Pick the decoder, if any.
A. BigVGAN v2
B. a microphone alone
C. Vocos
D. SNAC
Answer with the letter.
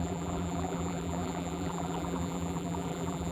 A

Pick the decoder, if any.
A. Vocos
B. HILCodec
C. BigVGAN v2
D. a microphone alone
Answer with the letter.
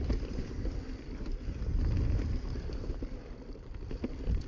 C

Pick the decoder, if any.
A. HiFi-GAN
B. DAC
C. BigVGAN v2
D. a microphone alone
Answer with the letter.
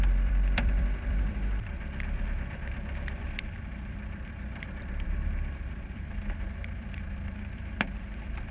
C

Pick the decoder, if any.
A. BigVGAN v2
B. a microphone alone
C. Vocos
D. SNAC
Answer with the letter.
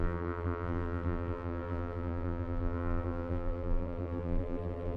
A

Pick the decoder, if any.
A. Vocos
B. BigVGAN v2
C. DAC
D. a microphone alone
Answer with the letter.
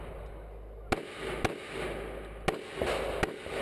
D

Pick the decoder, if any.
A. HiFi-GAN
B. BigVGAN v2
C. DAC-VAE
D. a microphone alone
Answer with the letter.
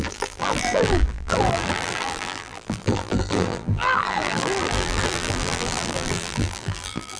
B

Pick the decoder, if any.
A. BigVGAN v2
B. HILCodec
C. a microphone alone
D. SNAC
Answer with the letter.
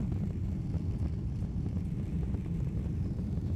A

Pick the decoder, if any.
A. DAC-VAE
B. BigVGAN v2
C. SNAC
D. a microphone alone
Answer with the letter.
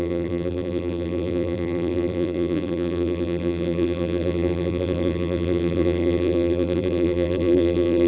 B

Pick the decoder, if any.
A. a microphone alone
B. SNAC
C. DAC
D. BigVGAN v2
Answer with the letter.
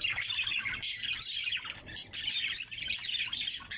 A